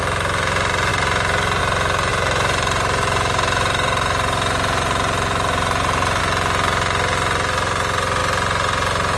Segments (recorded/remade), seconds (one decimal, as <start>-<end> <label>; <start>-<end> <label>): 0.0-0.9 recorded; 0.9-1.6 remade; 1.6-2.1 recorded; 2.1-6.2 remade; 6.2-9.2 recorded